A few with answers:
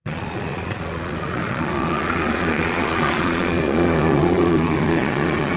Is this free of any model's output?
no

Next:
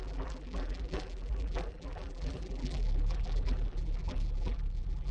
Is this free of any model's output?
no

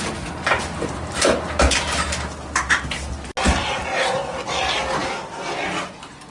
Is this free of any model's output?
yes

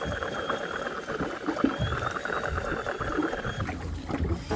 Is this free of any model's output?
yes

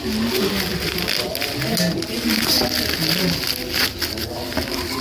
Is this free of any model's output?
yes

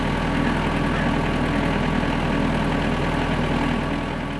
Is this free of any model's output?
yes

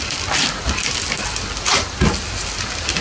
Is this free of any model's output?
yes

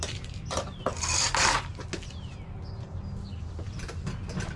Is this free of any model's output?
yes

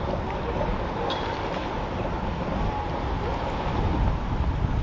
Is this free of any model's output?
yes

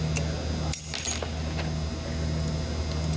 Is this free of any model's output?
yes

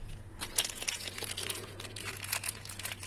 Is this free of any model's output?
no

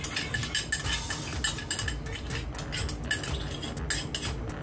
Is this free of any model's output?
yes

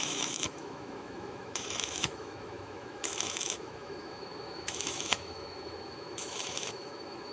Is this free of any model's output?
no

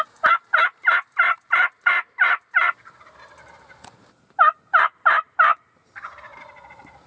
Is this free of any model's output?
no